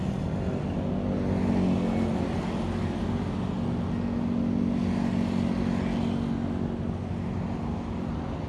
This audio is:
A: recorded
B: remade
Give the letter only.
A